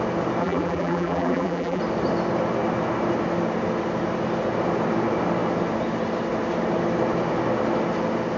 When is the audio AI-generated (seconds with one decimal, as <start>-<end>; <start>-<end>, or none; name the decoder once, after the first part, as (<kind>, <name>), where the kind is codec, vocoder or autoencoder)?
0.4-1.8 (vocoder, BigVGAN v2)